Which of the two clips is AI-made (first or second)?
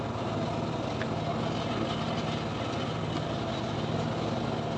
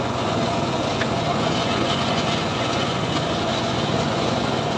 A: second